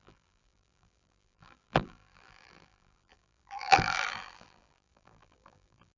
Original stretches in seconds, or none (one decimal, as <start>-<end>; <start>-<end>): none